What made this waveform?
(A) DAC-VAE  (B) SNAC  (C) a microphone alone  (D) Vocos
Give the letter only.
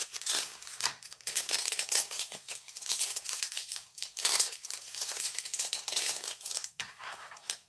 B